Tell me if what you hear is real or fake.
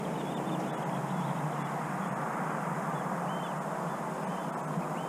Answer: real